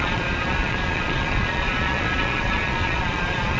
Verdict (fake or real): fake